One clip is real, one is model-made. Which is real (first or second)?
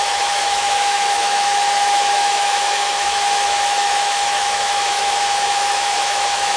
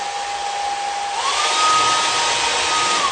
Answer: second